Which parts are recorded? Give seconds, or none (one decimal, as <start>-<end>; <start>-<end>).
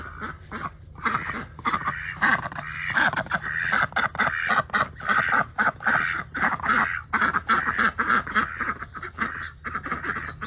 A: 0.0-10.5